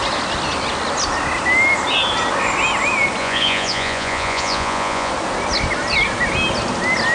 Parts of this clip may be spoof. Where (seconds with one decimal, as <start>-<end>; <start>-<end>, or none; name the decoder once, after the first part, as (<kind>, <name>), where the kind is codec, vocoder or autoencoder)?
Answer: 3.2-5.1 (vocoder, Vocos)